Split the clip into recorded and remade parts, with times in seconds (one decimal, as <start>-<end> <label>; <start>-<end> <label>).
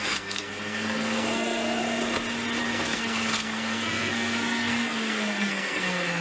0.0-1.8 remade; 1.8-2.6 recorded; 2.6-6.2 remade